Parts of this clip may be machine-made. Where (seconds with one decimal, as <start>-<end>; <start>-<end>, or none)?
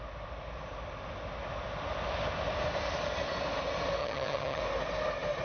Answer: 4.0-4.6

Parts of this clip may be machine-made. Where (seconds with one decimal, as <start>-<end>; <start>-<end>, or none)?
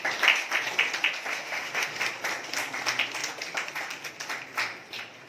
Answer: 1.3-2.0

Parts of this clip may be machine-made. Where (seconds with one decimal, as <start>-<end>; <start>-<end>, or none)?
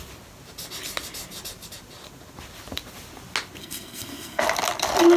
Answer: 3.6-4.4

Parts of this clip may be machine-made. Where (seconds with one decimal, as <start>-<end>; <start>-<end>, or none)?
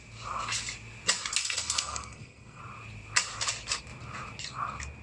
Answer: 1.4-2.6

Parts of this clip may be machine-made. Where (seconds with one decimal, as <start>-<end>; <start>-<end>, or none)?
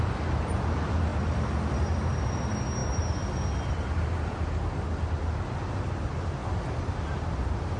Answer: 6.4-6.9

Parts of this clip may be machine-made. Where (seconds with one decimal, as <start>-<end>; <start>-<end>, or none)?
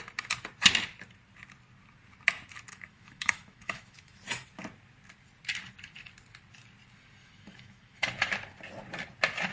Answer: 2.7-4.2; 7.2-8.1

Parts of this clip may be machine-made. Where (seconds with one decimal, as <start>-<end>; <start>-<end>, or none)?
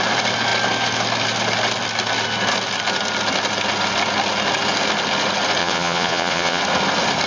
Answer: 5.6-6.6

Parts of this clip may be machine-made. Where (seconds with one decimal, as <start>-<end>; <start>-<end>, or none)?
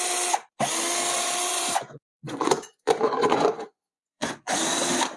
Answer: 1.5-4.6